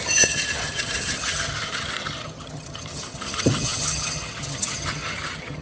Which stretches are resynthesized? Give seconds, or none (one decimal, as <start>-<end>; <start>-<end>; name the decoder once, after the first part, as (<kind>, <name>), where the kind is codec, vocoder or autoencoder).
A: 0.0-5.6 (vocoder, HiFi-GAN)